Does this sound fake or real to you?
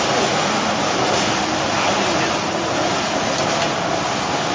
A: real